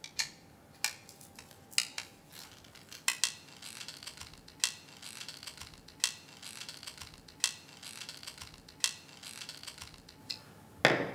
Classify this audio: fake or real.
real